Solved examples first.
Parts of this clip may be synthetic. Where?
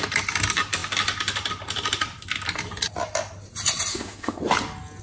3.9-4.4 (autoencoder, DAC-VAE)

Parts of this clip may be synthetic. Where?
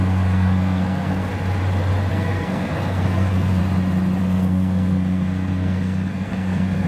0.0-1.3 (codec, SNAC); 2.1-3.6; 4.2-6.9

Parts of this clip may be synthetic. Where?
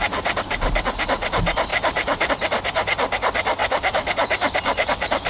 1.7-2.3 (vocoder, BigVGAN v2); 3.6-5.3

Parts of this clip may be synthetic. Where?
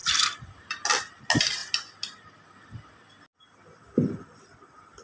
none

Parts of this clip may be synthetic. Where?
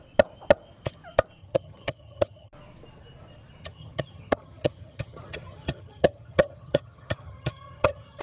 1.4-2.5 (vocoder, HiFi-GAN); 3.6-8.2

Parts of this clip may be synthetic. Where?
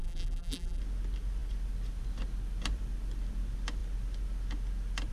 0.0-0.8 (vocoder, BigVGAN v2)